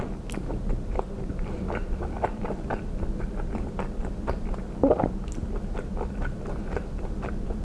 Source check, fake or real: real